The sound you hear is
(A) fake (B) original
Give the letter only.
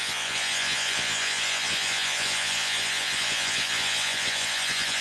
A